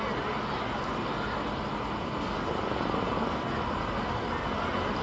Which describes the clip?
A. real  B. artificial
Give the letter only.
A